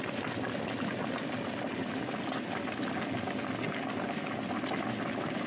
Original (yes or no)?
yes